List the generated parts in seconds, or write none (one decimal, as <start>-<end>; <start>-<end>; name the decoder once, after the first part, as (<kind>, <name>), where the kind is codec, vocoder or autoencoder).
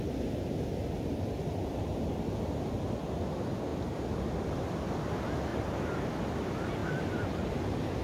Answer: 3.7-4.8 (vocoder, BigVGAN v2)